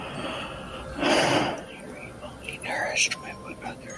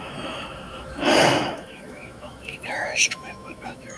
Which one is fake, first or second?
second